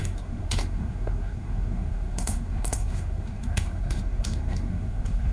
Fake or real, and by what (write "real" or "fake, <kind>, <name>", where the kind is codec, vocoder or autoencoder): fake, codec, SNAC